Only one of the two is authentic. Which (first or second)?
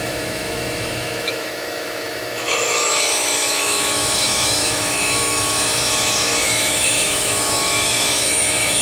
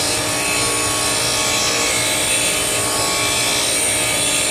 second